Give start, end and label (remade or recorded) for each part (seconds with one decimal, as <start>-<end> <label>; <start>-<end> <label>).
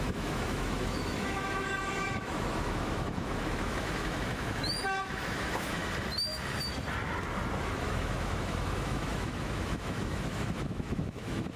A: 0.0-5.8 remade; 5.8-7.6 recorded; 7.6-11.6 remade